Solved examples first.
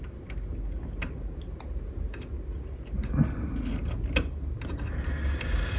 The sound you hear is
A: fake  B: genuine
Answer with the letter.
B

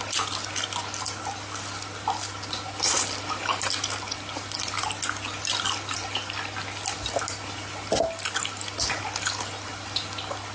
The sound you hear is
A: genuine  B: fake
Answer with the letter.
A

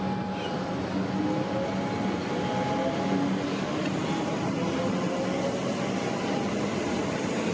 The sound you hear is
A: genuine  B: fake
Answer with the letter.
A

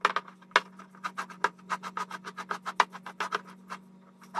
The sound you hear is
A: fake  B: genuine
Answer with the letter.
B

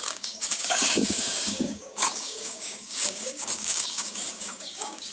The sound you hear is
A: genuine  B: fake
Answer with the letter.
B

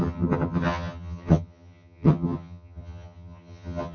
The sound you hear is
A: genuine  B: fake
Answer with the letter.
B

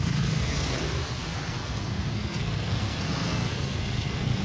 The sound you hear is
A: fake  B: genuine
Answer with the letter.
A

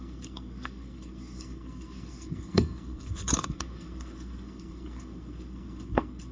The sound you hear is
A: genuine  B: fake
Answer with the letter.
B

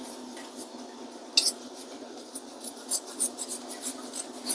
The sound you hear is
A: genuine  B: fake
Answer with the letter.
A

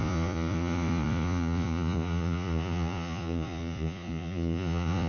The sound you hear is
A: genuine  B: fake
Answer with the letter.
B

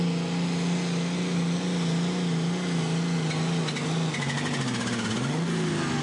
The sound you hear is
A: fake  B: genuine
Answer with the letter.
B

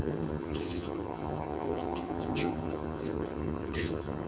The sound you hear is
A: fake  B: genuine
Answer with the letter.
A